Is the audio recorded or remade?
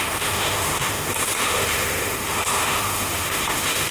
remade